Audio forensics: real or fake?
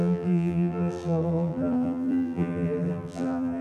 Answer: fake